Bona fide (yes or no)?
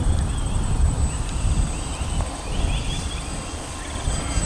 yes